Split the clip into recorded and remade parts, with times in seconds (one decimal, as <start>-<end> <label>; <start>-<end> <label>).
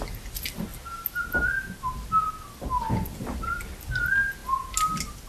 0.0-5.3 recorded